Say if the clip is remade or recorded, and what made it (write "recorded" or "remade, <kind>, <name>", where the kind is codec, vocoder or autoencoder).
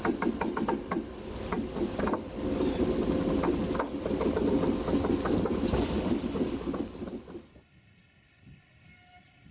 recorded